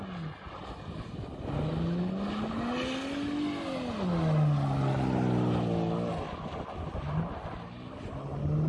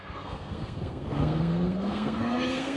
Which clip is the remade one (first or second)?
second